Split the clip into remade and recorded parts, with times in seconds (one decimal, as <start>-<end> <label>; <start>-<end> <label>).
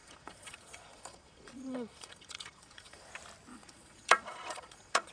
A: 0.0-3.1 remade; 3.1-3.5 recorded; 3.5-5.1 remade